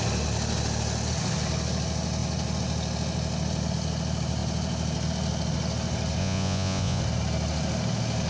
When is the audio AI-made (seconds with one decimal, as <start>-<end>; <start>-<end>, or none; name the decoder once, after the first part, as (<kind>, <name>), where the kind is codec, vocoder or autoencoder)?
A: 6.2-7.0 (vocoder, Vocos)